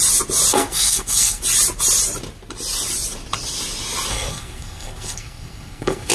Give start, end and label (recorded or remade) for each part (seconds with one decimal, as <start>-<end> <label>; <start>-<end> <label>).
0.0-0.5 recorded; 0.5-1.4 remade; 1.4-4.1 recorded; 4.1-6.1 remade

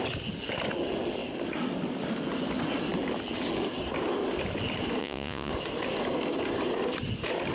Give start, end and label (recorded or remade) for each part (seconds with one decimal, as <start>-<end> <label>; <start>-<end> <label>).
0.0-5.0 recorded; 5.0-5.5 remade; 5.5-7.5 recorded

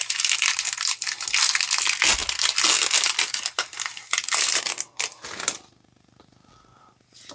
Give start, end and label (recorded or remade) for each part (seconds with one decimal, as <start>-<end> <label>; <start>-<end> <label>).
0.0-7.3 recorded

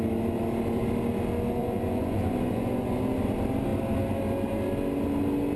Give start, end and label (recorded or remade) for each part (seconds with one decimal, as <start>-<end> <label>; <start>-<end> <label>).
0.0-1.6 recorded; 1.6-3.0 remade; 3.0-5.6 recorded

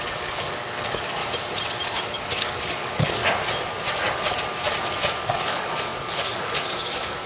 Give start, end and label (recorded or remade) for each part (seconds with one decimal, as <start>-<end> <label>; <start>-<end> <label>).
0.0-1.2 remade; 1.2-2.0 recorded; 2.0-3.2 remade; 3.2-5.2 recorded; 5.2-7.3 remade